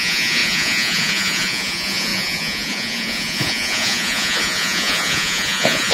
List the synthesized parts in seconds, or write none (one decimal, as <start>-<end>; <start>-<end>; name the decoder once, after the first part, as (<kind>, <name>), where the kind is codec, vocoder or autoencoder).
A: 0.0-5.9 (vocoder, Vocos)